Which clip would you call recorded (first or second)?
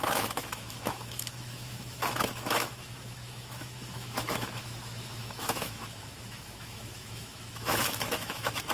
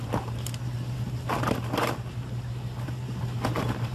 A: second